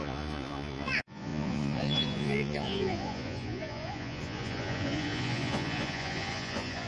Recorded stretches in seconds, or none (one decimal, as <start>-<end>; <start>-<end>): none